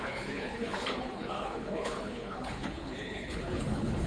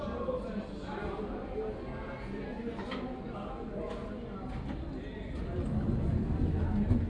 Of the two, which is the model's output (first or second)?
first